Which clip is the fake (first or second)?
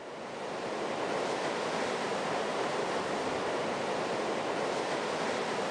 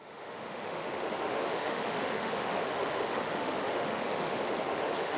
second